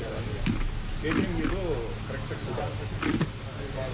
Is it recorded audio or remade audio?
recorded